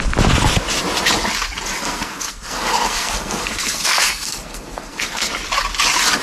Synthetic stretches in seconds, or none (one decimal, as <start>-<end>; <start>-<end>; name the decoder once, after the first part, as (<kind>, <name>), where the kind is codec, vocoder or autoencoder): 1.8-5.3 (codec, SNAC)